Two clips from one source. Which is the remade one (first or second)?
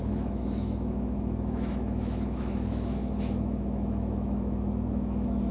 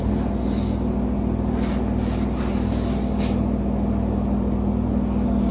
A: first